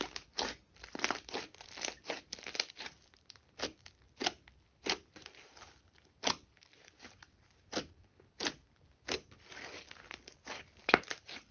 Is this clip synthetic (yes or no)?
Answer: no